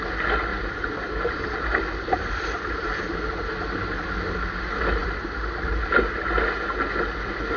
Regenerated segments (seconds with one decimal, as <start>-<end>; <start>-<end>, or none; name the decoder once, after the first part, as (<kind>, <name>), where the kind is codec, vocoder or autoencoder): 0.5-3.0 (vocoder, BigVGAN v2)